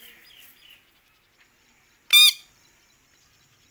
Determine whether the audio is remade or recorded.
recorded